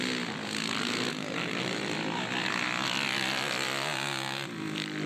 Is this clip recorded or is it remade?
recorded